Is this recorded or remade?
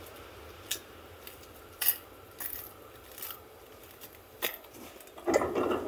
recorded